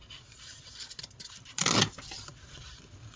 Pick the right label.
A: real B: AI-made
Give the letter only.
A